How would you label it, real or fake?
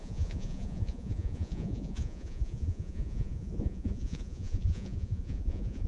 fake